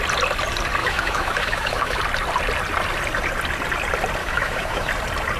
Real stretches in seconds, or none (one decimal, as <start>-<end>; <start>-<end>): 0.0-0.8; 2.0-4.2; 4.9-5.4